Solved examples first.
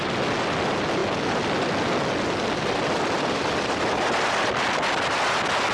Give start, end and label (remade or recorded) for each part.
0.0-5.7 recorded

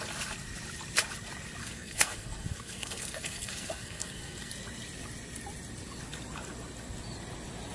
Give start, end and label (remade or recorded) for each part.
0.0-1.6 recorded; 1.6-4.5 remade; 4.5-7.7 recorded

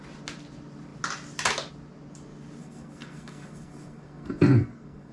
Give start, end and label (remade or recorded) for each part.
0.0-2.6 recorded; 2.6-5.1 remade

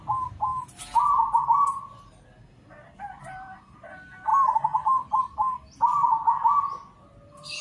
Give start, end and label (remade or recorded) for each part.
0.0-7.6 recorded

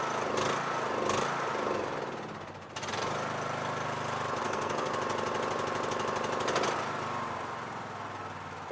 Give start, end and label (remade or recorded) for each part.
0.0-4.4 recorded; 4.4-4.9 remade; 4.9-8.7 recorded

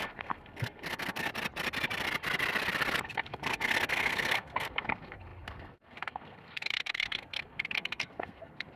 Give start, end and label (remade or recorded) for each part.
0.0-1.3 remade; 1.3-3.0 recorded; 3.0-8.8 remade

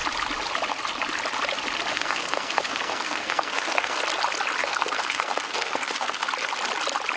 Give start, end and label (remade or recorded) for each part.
0.0-1.9 recorded; 1.9-4.0 remade; 4.0-4.6 recorded; 4.6-6.3 remade; 6.3-7.2 recorded